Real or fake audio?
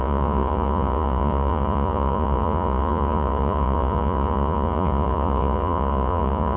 fake